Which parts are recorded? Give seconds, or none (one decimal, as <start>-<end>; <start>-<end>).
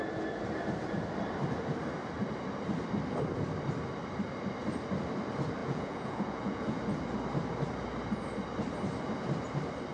0.0-5.6; 6.8-9.9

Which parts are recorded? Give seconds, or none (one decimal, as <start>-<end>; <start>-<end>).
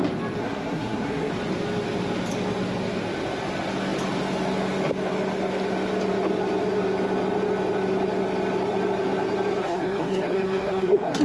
0.0-0.4; 1.3-9.6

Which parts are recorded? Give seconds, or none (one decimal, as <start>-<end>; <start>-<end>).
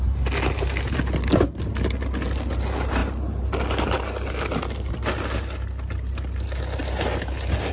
0.0-7.7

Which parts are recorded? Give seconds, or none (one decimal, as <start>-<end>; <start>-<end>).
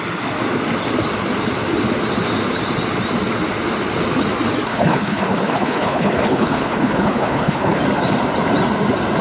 0.0-4.7; 7.8-9.2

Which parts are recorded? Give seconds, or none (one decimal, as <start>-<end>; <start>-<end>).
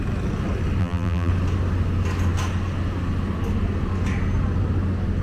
0.0-0.8; 1.3-5.2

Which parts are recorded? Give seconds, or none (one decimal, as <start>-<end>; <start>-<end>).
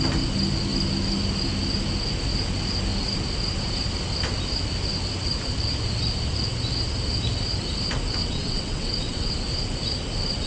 0.0-8.2; 9.3-10.5